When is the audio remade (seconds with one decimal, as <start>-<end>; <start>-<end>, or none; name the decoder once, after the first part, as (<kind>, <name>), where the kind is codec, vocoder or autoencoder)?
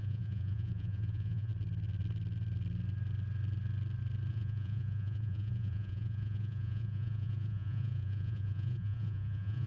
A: 0.0-1.5 (vocoder, Vocos); 4.3-9.7